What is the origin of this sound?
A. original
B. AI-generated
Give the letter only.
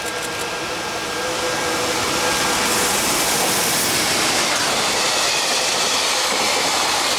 A